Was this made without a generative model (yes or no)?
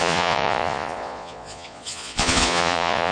no